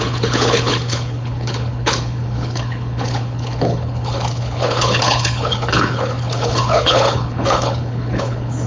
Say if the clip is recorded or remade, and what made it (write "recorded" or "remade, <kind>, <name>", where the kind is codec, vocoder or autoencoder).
remade, codec, HILCodec